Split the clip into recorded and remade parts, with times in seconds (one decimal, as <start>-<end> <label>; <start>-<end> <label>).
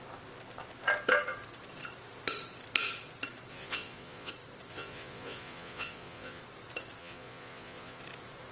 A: 0.0-3.5 recorded; 3.5-4.3 remade; 4.3-4.7 recorded; 4.7-6.4 remade; 6.4-7.0 recorded; 7.0-8.0 remade; 8.0-8.5 recorded